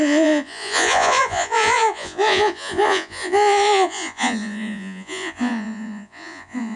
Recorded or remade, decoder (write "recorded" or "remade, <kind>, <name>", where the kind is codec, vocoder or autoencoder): remade, vocoder, Vocos